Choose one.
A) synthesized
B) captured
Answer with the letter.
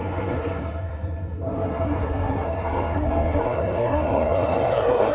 A